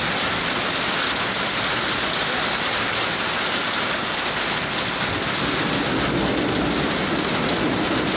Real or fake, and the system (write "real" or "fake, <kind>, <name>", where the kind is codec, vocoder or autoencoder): real